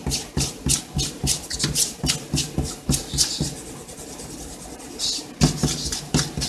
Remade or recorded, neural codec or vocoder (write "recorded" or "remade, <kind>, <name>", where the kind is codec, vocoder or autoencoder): recorded